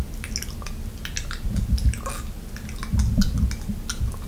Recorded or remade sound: recorded